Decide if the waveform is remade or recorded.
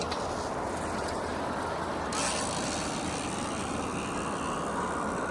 recorded